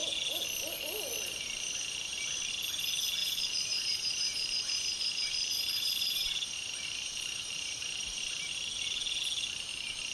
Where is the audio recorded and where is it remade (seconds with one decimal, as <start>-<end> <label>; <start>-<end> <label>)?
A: 0.0-3.2 recorded; 3.2-8.5 remade; 8.5-10.1 recorded